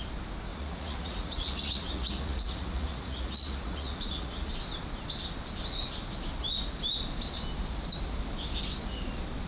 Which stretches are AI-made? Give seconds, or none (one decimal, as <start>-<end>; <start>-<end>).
0.5-4.5